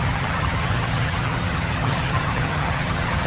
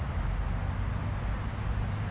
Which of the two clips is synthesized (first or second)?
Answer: first